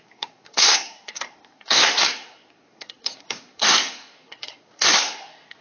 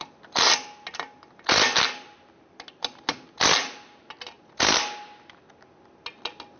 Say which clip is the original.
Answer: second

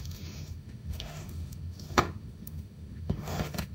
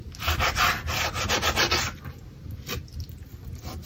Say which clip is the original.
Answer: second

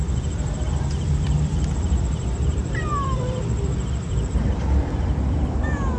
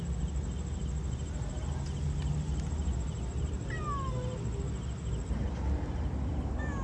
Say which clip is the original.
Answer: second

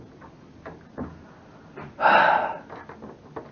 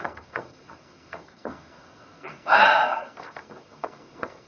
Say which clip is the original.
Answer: first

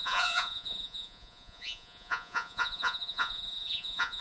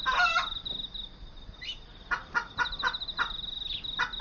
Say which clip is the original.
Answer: second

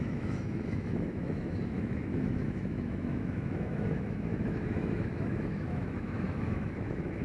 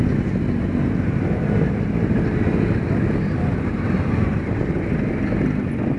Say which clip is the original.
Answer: second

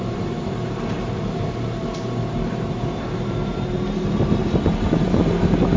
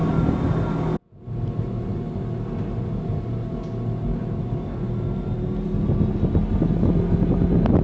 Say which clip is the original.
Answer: second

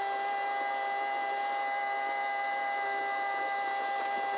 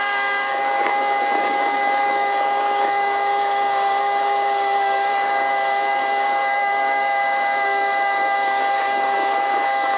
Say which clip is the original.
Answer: first